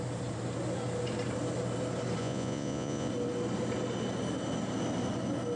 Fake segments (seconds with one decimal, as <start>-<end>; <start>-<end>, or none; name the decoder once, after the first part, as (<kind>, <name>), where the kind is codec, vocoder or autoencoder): 2.2-3.1 (vocoder, Vocos)